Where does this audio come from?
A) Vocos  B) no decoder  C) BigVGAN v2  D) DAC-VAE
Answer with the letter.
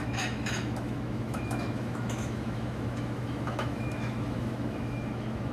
D